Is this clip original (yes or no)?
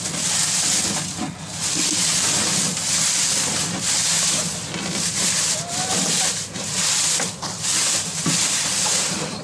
yes